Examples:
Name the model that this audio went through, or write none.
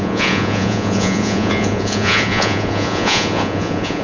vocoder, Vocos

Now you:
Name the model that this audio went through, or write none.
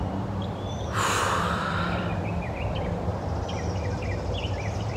vocoder, BigVGAN v2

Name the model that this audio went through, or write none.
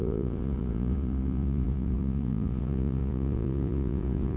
vocoder, Vocos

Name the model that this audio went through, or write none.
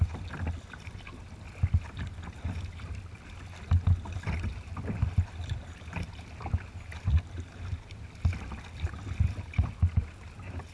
none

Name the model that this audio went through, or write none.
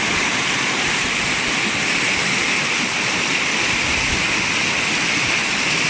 none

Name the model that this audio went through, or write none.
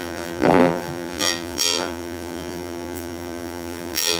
vocoder, BigVGAN v2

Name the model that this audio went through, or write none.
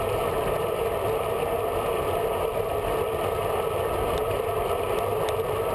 none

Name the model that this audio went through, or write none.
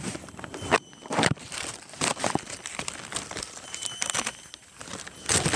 vocoder, BigVGAN v2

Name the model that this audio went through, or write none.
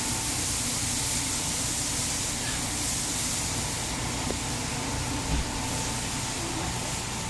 none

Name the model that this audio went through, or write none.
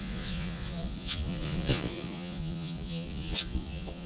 vocoder, Vocos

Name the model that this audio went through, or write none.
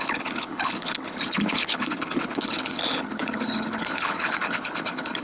codec, HILCodec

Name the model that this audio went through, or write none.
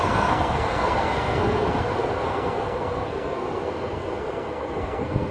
codec, SNAC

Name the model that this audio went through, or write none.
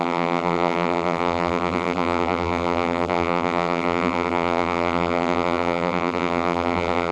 vocoder, BigVGAN v2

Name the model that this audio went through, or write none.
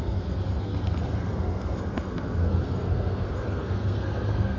codec, SNAC